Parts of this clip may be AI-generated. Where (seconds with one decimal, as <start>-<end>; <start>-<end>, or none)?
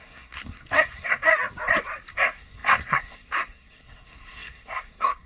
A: 0.0-1.3; 2.1-5.3